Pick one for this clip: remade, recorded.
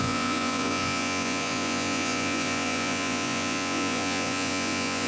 remade